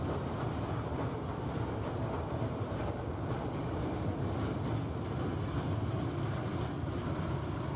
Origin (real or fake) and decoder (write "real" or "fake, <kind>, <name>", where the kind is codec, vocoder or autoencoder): real